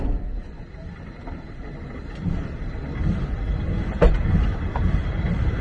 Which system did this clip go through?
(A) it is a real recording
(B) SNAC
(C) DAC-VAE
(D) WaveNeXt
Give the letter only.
A